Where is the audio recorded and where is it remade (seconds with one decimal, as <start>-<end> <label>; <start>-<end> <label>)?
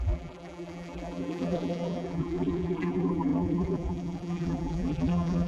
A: 0.0-5.5 remade